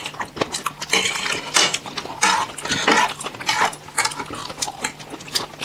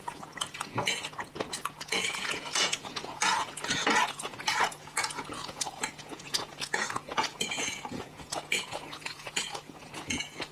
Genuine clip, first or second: first